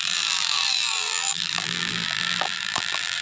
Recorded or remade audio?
remade